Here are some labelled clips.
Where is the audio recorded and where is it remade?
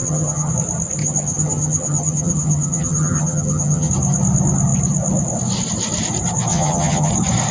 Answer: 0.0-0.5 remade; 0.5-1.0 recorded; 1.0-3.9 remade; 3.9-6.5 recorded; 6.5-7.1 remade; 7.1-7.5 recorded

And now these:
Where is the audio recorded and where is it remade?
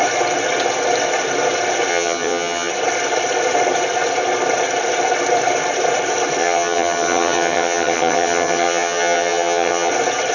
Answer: 0.0-1.9 recorded; 1.9-2.7 remade; 2.7-6.4 recorded; 6.4-9.9 remade; 9.9-10.3 recorded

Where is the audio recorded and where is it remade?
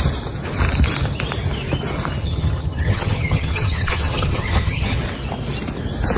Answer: 0.0-2.2 recorded; 2.2-5.0 remade; 5.0-6.2 recorded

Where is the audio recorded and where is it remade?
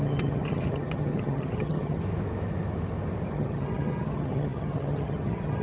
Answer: 0.0-2.0 remade; 2.0-3.3 recorded; 3.3-5.6 remade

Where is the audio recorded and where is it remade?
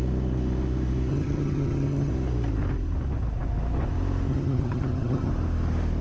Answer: 0.0-1.1 recorded; 1.1-2.1 remade; 2.1-4.3 recorded; 4.3-5.3 remade; 5.3-6.0 recorded